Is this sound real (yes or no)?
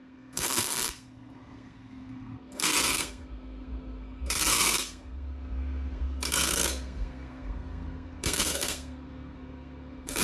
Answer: no